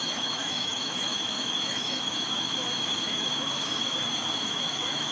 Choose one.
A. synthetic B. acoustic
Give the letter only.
A